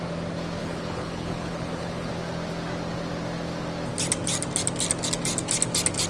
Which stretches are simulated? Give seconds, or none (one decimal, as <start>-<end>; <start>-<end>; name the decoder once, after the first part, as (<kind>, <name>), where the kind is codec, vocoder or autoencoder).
0.6-2.1 (codec, HILCodec)